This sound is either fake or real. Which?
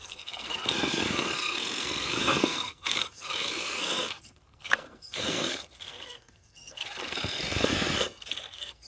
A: fake